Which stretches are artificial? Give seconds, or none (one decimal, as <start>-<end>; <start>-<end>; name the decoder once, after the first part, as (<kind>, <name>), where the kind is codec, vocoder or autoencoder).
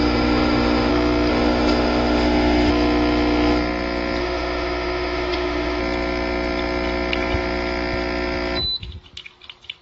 0.0-0.9 (autoencoder, DAC-VAE); 1.3-2.7; 4.2-5.8